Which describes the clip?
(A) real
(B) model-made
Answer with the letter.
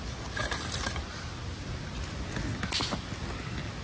A